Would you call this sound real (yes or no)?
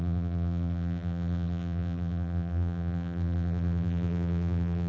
no